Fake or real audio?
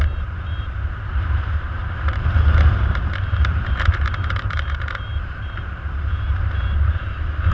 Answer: fake